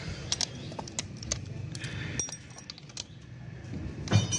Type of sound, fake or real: real